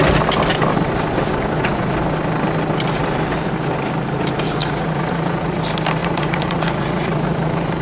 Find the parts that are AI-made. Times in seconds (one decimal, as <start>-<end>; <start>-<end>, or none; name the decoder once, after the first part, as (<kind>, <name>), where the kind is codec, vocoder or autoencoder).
4.6-5.6 (vocoder, Vocos); 6.0-7.8